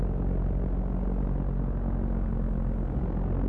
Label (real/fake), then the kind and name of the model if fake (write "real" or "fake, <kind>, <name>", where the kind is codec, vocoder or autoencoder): real